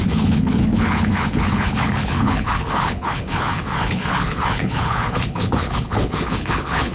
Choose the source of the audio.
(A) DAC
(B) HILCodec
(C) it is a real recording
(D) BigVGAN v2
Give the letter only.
B